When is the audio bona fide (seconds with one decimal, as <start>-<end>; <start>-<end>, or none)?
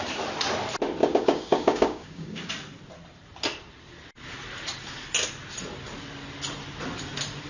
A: 0.0-1.0; 2.5-7.5